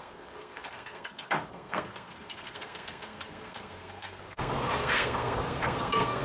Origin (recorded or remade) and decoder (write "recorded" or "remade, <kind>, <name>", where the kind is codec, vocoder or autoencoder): remade, codec, SNAC